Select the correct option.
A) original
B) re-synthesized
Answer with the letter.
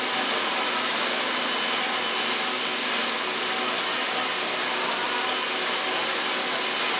A